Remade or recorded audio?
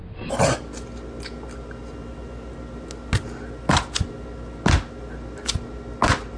recorded